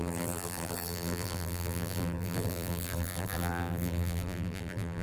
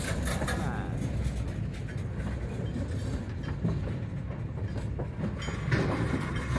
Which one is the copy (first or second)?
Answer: first